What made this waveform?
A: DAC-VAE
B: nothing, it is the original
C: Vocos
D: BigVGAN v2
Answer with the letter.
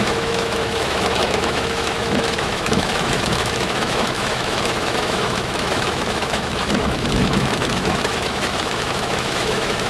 A